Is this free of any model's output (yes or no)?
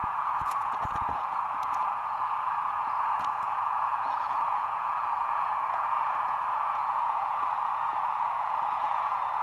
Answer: no